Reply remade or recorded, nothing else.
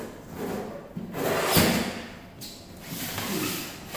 recorded